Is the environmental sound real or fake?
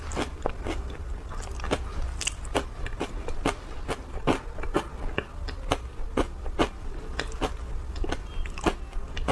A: real